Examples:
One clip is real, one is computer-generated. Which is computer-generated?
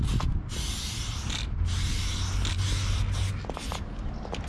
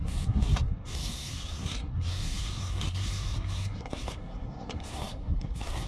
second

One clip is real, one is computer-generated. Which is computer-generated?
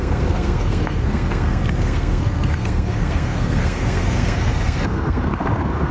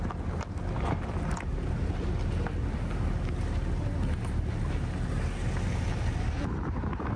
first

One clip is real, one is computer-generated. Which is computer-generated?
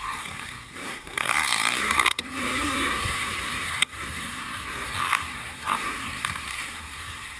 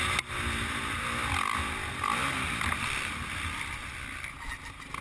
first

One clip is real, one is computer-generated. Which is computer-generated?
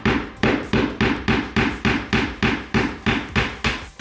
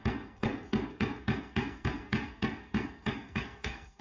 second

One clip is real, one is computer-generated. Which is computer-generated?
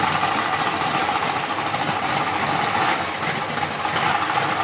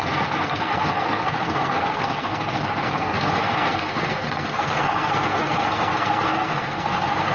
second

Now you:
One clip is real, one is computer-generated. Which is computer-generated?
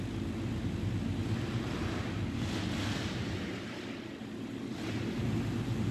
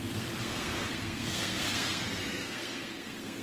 second